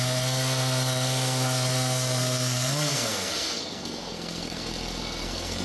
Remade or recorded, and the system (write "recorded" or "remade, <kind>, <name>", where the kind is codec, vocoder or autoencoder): remade, codec, SNAC